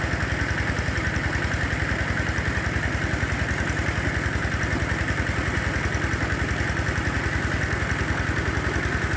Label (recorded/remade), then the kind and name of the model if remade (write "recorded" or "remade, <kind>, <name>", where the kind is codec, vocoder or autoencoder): recorded